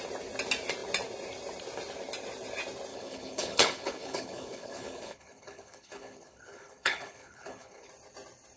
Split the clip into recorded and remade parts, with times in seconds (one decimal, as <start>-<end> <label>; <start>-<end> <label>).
0.0-2.9 recorded; 2.9-7.9 remade; 7.9-8.6 recorded